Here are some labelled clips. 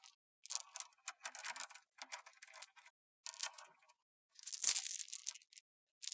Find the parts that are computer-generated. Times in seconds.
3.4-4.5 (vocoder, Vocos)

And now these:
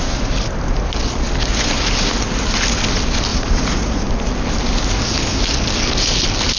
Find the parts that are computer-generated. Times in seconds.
3.3-4.0 (vocoder, Vocos)

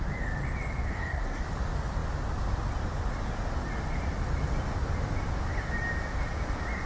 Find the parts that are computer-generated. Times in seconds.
0.9-1.4 (codec, SNAC)

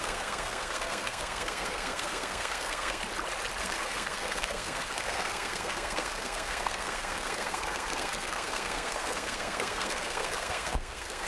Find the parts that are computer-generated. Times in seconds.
0.0-3.0 (codec, SNAC); 3.6-11.3

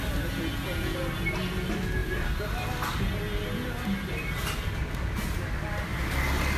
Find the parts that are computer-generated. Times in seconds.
none

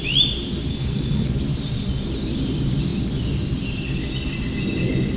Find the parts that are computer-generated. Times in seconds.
0.7-1.3 (codec, SNAC)